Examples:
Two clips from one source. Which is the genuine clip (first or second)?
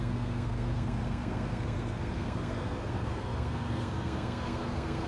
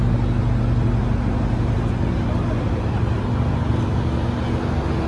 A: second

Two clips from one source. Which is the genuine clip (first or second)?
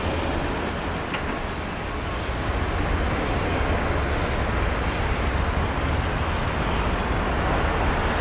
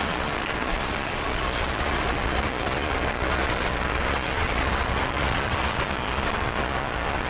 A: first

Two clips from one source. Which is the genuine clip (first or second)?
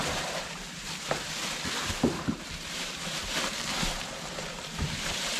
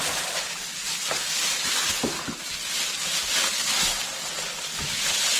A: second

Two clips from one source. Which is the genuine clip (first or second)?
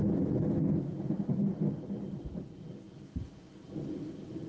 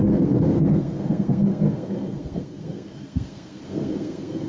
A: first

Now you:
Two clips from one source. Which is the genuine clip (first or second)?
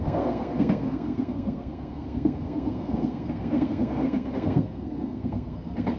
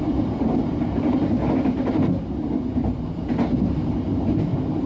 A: second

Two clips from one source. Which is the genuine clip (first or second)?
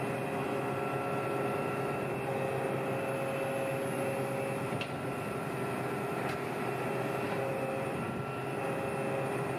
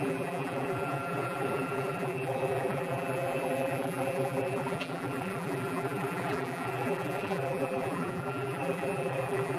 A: first